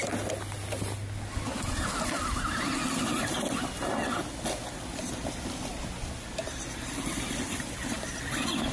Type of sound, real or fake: real